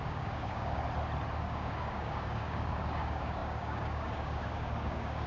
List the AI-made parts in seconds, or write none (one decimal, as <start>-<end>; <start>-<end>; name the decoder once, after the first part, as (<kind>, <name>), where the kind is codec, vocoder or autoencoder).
0.0-0.8 (codec, DAC); 1.4-5.3